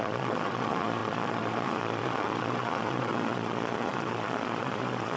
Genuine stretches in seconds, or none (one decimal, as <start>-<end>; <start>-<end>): none